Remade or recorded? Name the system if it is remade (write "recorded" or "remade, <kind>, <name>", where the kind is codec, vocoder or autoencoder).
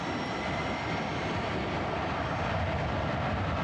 recorded